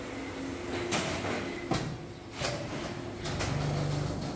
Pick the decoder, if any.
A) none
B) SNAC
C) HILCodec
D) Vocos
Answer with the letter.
A